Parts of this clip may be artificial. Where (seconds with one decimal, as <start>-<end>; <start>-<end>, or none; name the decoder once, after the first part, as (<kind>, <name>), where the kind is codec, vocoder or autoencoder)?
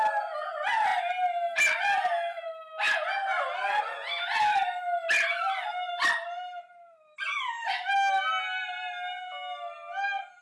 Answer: none